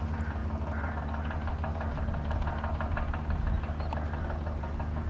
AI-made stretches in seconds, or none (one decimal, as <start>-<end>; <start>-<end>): none